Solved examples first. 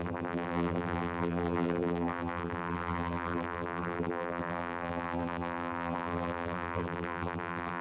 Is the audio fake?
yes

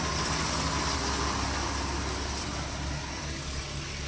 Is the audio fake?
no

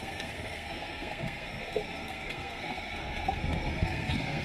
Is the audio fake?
yes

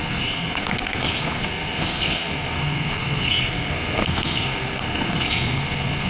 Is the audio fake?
yes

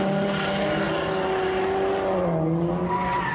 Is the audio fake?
no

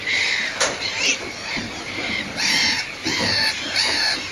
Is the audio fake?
yes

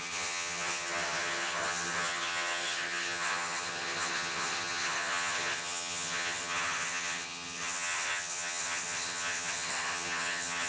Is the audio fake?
yes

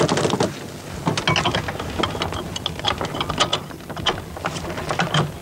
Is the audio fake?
no